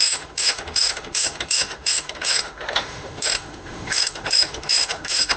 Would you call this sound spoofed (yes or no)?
yes